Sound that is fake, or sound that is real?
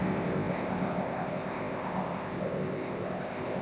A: fake